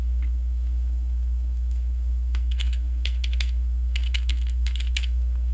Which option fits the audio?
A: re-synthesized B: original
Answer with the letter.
A